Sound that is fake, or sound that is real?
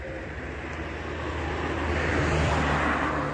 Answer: real